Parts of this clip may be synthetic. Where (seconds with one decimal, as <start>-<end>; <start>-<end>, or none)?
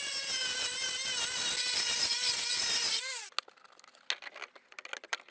none